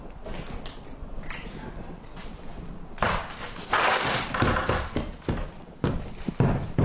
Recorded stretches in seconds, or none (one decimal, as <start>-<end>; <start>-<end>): 0.0-6.8